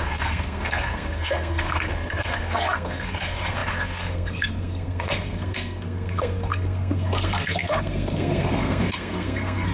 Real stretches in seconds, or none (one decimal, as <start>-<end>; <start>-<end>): none